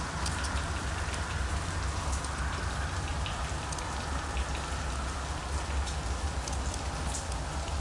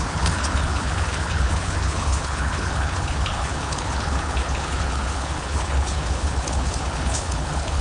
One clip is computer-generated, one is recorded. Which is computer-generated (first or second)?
second